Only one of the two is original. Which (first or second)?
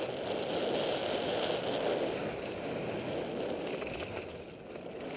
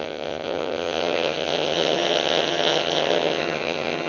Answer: first